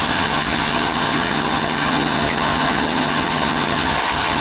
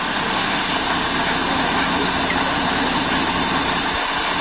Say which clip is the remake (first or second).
first